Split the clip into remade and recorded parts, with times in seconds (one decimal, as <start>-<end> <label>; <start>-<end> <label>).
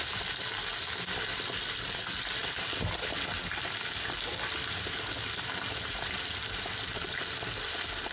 0.0-8.1 recorded